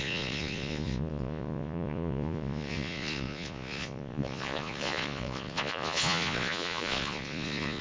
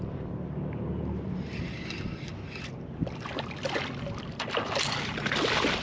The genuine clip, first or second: second